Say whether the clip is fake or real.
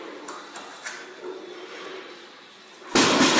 real